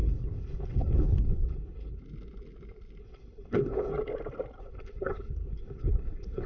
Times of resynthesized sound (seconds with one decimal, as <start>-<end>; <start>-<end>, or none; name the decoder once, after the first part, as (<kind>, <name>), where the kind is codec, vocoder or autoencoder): 0.0-2.0 (codec, HILCodec); 3.0-3.9; 4.6-6.5